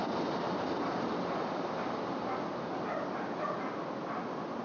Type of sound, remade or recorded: recorded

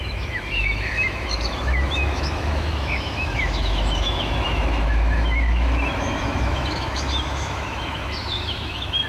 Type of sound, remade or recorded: remade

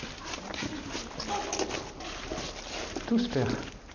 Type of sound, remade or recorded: recorded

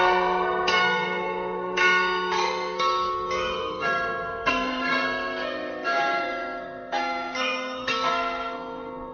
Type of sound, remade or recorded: remade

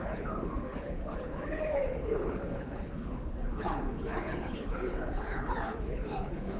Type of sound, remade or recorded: remade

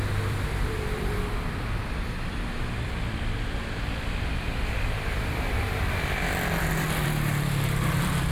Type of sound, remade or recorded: remade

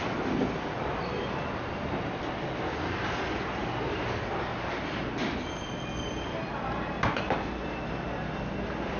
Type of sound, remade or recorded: recorded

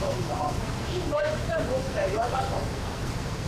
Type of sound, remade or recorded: remade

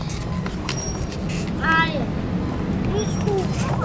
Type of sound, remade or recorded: recorded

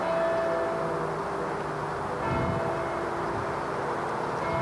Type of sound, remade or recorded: recorded